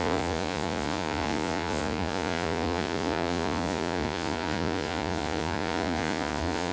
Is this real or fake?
fake